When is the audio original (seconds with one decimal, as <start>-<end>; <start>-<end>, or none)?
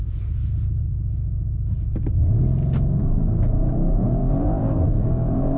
0.9-3.0